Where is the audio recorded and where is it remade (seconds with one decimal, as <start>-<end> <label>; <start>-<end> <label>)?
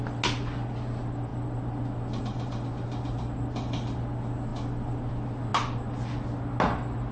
0.0-7.1 recorded